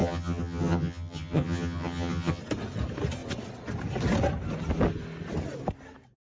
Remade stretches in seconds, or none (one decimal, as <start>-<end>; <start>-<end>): 0.0-2.4